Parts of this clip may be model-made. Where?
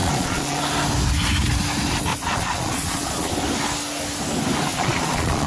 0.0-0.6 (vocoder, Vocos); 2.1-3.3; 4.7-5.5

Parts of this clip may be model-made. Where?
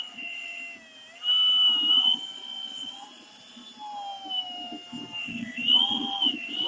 0.0-0.6 (vocoder, Vocos); 1.9-3.6; 5.2-6.7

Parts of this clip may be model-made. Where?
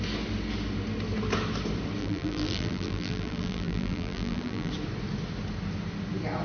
2.0-4.7 (vocoder, BigVGAN v2)